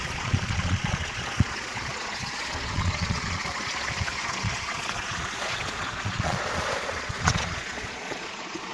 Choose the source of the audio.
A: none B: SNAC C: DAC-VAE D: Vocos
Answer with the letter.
D